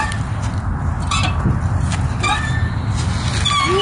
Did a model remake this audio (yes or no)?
no